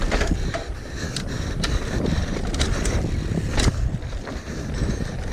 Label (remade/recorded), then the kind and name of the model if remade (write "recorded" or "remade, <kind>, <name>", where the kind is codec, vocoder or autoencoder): recorded